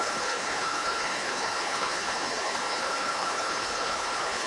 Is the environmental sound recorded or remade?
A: remade